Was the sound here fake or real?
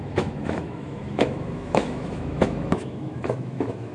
fake